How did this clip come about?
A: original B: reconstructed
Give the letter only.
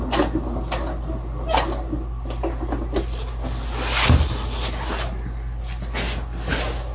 A